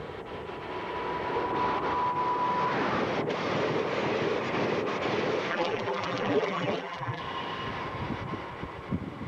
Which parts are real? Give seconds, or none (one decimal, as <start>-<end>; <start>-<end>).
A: 0.0-5.5; 7.2-9.3